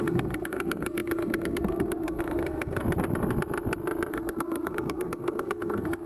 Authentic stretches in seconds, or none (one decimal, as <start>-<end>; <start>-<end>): 2.8-4.1